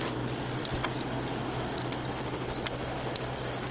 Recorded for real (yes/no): yes